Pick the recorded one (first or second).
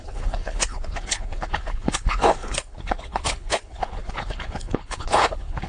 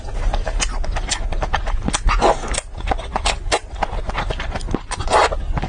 second